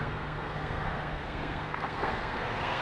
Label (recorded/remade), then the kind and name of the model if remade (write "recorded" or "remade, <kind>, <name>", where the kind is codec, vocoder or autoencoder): remade, codec, SNAC